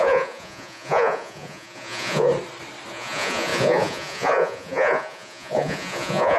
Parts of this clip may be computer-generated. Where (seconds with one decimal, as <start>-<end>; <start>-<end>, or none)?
0.0-2.3; 2.9-6.4